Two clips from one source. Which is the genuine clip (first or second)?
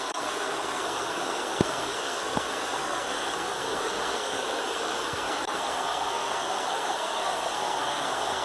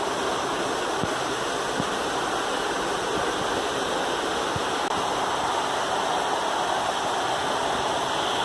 second